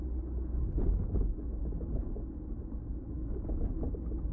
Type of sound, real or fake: real